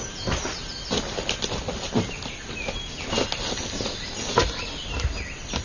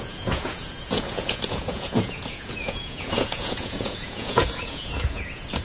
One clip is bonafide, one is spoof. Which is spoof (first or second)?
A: second